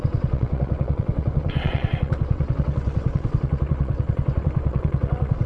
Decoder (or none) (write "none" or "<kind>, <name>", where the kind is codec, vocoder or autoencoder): vocoder, WaveNeXt